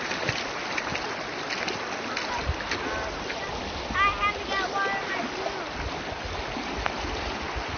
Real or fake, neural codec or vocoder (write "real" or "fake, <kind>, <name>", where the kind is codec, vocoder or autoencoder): real